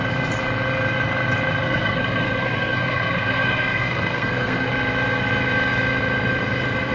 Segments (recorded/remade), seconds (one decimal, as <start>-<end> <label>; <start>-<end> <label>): 0.0-1.6 recorded; 1.6-4.7 remade; 4.7-6.9 recorded